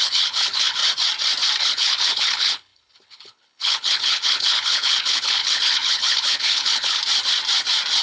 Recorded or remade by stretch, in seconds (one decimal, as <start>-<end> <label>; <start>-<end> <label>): 0.0-0.8 remade; 0.8-1.6 recorded; 1.6-7.0 remade; 7.0-8.0 recorded